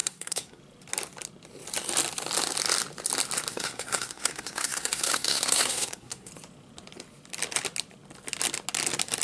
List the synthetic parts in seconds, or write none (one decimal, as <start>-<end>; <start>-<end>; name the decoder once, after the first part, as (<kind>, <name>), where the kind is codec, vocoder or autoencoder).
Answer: 0.0-0.6 (codec, SNAC); 3.5-6.3